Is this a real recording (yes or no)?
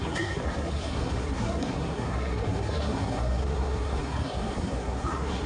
no